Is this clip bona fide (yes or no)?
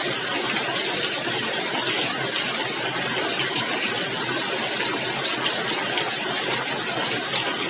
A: yes